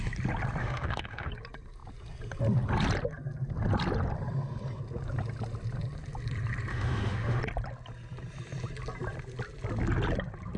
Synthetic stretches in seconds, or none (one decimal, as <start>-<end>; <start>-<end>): 0.6-1.3; 6.7-7.4